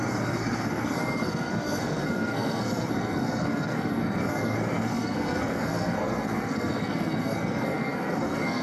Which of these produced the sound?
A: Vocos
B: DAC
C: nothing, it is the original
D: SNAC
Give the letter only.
D